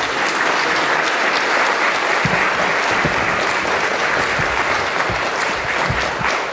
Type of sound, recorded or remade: recorded